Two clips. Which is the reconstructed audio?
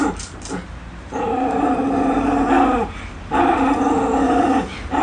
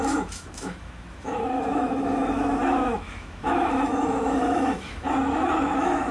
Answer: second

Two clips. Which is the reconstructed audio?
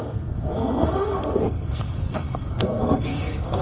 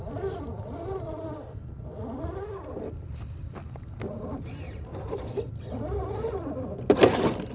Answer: first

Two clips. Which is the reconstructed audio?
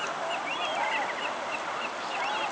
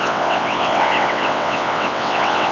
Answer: second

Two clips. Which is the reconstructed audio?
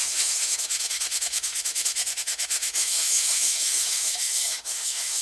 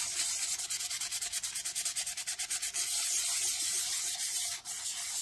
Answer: first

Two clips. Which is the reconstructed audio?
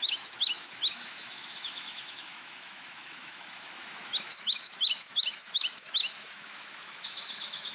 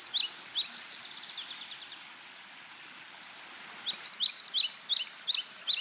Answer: first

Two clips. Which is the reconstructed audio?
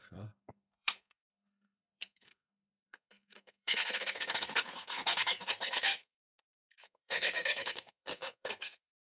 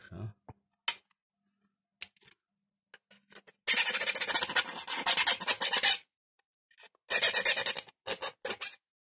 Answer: first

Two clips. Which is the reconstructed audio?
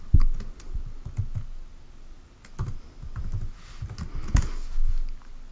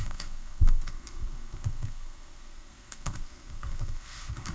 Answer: second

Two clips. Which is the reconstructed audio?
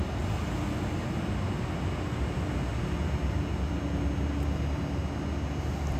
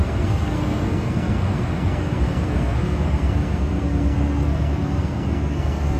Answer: second